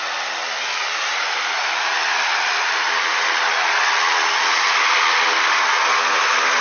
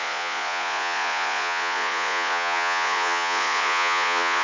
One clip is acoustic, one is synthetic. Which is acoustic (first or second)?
first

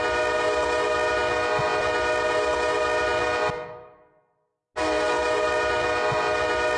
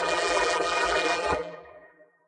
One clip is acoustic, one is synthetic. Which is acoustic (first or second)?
first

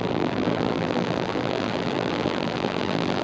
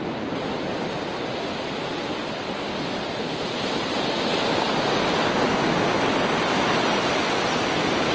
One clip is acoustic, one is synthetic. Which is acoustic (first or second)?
second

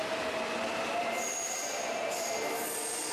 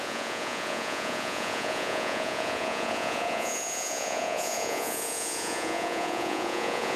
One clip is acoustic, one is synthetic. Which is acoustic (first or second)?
first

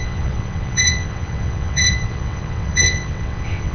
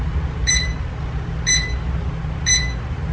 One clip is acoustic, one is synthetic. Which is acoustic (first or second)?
second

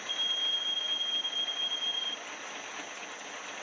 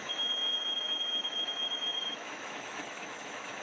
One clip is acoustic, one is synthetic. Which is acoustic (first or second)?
first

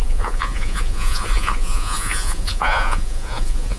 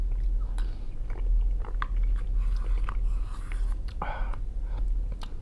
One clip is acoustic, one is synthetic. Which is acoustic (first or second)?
second